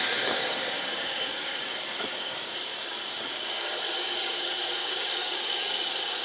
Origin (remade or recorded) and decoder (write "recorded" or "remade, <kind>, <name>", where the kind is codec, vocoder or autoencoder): remade, codec, DAC